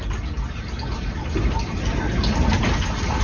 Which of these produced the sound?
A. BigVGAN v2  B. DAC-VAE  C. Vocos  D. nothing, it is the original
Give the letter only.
D